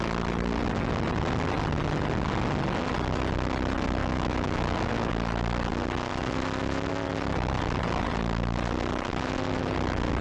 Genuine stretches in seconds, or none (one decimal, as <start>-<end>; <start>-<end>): 0.0-4.0; 5.1-10.2

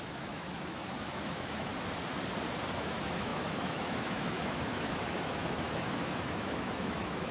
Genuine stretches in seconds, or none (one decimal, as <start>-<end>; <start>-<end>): 1.7-2.8